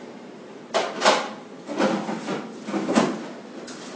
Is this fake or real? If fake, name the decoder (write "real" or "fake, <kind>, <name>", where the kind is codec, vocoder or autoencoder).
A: real